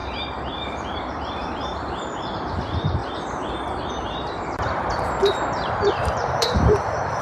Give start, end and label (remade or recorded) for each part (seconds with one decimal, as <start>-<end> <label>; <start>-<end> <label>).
0.0-2.3 remade; 2.3-3.0 recorded; 3.0-7.2 remade